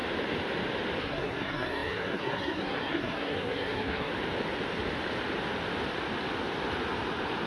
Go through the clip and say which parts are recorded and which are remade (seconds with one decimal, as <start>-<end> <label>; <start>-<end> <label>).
0.0-1.0 recorded; 1.0-4.1 remade; 4.1-7.5 recorded